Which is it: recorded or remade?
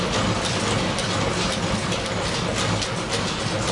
recorded